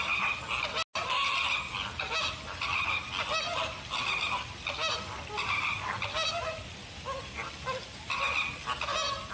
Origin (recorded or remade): recorded